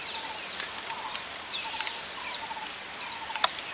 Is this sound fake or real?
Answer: real